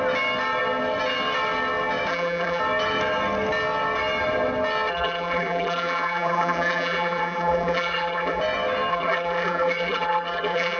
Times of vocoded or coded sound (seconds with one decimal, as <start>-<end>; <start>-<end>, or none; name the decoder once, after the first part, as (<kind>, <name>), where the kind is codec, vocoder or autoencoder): 2.1-2.6 (vocoder, BigVGAN v2); 4.9-8.4; 8.9-10.8